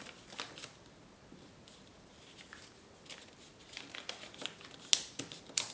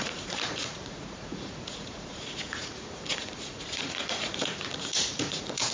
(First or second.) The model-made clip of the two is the second